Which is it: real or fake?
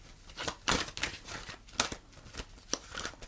real